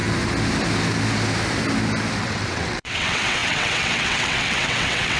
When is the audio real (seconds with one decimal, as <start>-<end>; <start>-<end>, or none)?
0.0-2.2